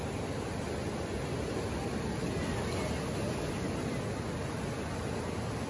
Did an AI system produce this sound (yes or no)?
no